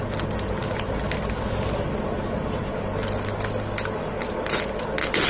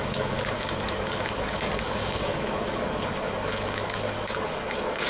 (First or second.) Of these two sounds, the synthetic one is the second